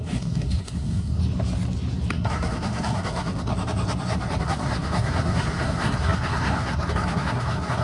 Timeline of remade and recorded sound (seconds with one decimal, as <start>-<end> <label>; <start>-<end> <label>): 0.0-1.2 remade; 1.2-2.1 recorded; 2.1-3.5 remade; 3.5-4.4 recorded; 4.4-7.8 remade